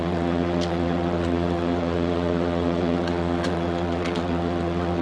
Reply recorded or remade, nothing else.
remade